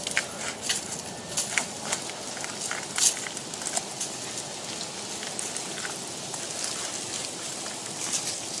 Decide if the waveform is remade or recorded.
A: recorded